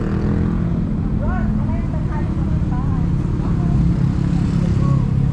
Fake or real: real